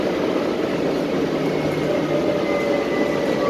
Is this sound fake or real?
real